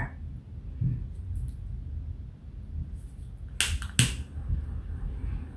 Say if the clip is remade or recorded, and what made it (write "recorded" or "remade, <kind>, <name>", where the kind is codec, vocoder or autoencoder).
recorded